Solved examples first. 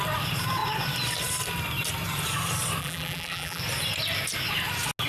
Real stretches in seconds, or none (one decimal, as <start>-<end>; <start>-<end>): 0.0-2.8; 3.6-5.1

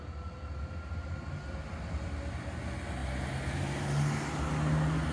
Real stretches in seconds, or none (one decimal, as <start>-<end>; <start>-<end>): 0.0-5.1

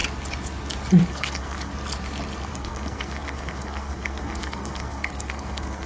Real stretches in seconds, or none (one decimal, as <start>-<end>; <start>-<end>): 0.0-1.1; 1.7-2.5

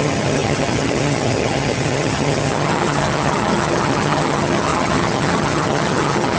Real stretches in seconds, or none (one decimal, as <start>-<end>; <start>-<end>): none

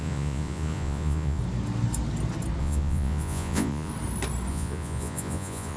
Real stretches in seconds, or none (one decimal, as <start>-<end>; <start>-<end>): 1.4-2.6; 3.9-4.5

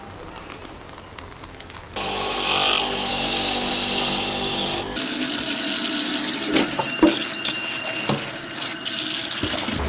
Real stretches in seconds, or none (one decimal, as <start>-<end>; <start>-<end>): 0.0-3.1; 3.7-9.9